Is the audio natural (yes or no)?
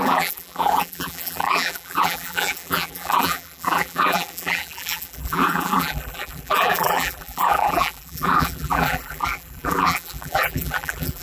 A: no